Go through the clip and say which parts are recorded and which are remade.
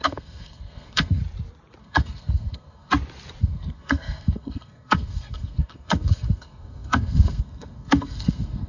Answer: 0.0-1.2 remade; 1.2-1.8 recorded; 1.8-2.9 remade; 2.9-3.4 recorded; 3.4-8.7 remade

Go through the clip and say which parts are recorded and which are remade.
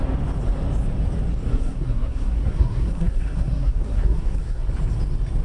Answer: 0.0-1.5 recorded; 1.5-4.7 remade; 4.7-5.4 recorded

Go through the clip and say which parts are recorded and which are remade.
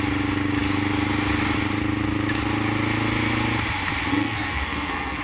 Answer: 0.0-4.1 recorded; 4.1-5.2 remade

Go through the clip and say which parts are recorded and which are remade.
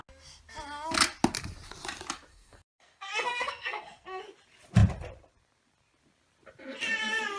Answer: 0.0-2.3 recorded; 2.3-4.2 remade; 4.2-7.4 recorded